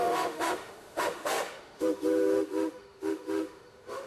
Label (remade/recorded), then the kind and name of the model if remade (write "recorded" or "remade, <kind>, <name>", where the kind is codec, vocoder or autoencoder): remade, autoencoder, DAC-VAE